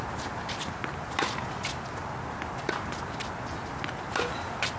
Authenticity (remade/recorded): recorded